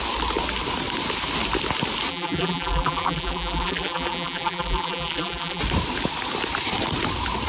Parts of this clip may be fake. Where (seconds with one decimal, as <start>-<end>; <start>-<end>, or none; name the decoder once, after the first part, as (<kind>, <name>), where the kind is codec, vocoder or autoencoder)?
2.1-5.6 (vocoder, BigVGAN v2)